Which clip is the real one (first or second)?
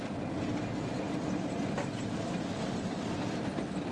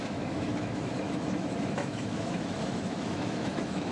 first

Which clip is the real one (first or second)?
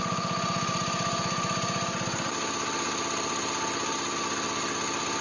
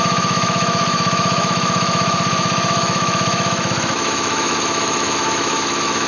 first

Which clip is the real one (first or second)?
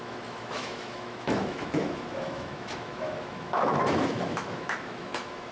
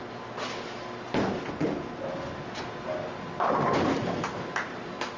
second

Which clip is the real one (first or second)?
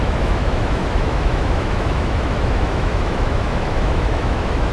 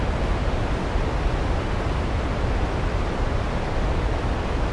second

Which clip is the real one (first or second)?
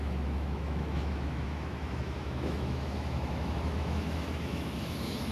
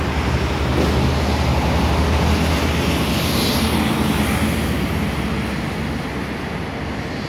second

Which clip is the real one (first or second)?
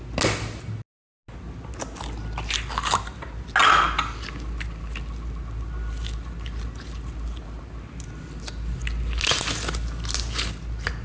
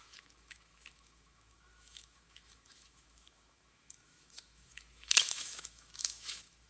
first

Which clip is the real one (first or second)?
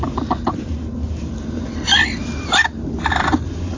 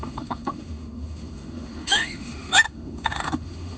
first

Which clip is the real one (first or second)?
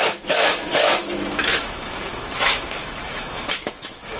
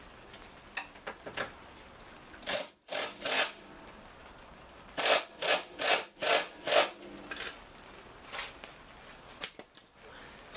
second